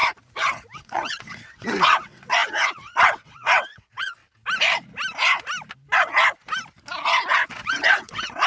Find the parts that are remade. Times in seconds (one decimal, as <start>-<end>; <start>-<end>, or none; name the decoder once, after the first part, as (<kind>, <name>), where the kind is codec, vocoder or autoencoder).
0.8-4.2 (vocoder, WaveNeXt); 7.5-8.5